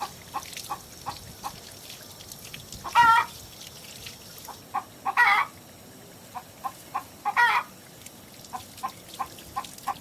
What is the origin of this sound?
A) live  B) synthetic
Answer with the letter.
A